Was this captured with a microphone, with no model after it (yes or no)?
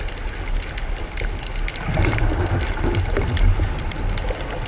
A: yes